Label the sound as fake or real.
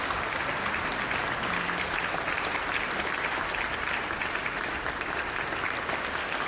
real